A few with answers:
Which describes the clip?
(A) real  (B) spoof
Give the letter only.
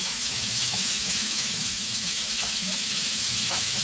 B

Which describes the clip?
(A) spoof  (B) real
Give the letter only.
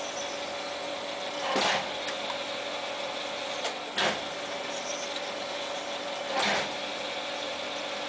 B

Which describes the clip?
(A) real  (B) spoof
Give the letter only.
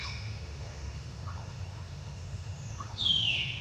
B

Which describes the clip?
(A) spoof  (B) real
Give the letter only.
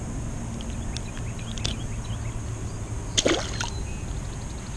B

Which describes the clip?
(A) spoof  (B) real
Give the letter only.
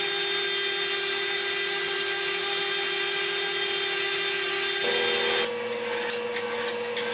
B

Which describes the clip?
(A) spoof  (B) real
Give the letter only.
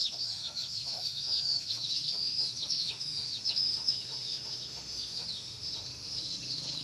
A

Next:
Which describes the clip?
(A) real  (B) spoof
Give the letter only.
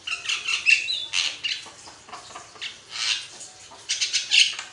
A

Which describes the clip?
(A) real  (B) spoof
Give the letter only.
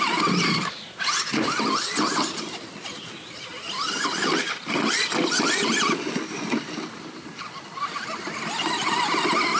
A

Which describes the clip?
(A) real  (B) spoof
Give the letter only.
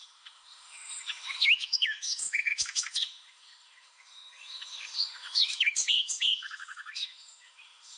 B